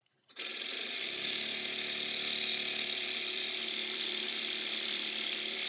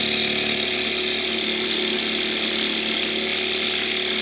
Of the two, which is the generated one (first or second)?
first